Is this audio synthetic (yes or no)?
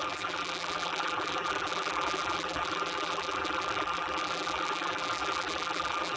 yes